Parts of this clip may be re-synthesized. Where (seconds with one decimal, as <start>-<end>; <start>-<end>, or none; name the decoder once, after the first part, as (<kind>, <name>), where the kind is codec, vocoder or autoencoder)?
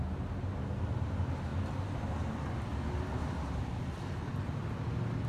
none